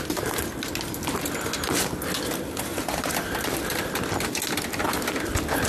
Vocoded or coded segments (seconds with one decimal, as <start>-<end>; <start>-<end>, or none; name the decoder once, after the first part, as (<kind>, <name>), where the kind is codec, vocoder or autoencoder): 2.7-3.6 (vocoder, BigVGAN v2)